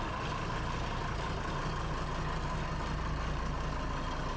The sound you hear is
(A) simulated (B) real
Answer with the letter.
B